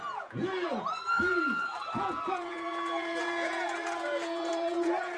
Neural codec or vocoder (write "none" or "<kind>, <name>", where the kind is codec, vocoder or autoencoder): vocoder, Vocos